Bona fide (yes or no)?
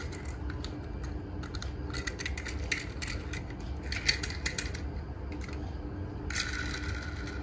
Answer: yes